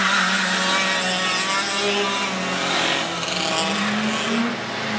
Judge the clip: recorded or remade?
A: recorded